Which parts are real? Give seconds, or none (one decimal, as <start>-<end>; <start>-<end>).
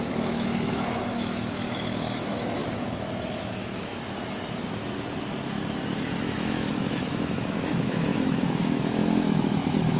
3.9-6.2